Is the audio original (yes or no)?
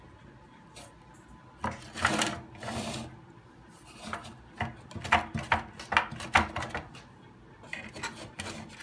yes